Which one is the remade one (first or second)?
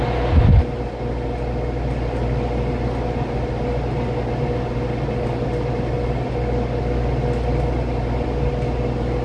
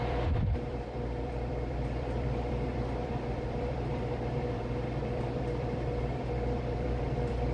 second